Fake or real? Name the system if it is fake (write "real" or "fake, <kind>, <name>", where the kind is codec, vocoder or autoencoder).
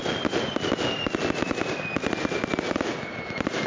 real